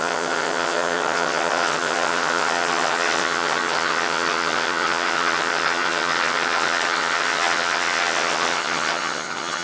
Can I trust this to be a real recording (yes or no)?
no